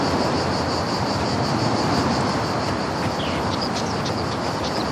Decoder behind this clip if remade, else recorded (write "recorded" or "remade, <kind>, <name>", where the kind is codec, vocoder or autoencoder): recorded